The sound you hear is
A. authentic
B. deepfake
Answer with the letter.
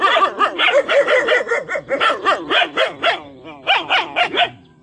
A